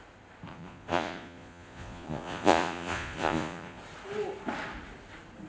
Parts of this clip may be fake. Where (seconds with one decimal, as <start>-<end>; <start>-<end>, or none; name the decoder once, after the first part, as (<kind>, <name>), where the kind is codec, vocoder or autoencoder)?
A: 0.5-3.8 (vocoder, Vocos)